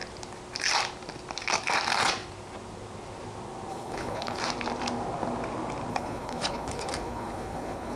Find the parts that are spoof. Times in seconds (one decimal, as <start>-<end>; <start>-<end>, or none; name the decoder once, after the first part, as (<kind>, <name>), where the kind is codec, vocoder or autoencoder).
3.7-4.4 (codec, HILCodec); 5.9-8.0